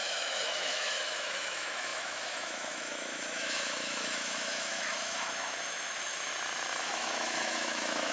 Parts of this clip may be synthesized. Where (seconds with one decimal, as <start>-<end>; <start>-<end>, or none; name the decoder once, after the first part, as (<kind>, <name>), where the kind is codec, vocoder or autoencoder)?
0.0-6.3 (autoencoder, DAC-VAE); 6.8-8.1